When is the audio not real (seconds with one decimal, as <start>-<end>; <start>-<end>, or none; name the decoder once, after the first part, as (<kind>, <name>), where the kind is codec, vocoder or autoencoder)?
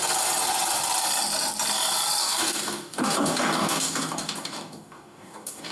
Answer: 2.2-5.7 (codec, DAC)